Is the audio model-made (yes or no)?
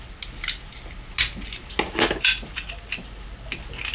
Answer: no